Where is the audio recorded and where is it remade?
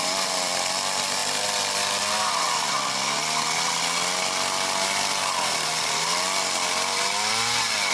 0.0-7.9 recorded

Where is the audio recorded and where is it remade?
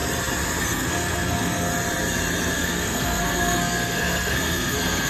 0.0-0.6 recorded; 0.6-1.7 remade; 1.7-2.5 recorded; 2.5-5.1 remade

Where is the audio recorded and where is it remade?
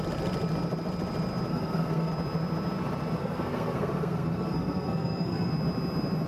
0.0-1.5 recorded; 1.5-2.1 remade; 2.1-3.2 recorded; 3.2-5.5 remade; 5.5-6.3 recorded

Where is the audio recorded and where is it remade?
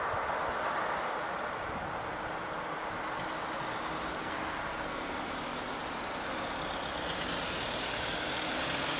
0.0-4.2 recorded; 4.2-5.1 remade; 5.1-9.0 recorded